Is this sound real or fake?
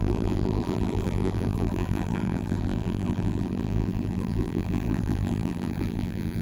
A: fake